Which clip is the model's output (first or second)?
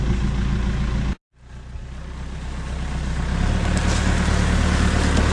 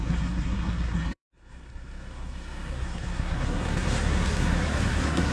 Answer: second